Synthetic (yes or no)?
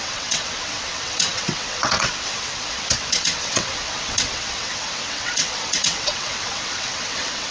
yes